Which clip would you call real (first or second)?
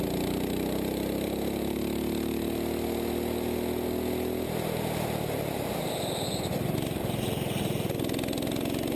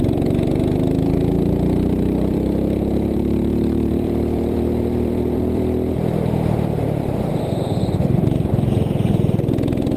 first